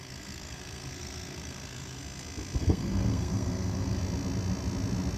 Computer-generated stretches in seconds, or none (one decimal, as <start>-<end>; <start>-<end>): 0.0-2.0; 2.6-4.0